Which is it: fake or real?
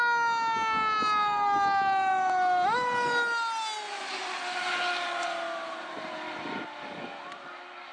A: real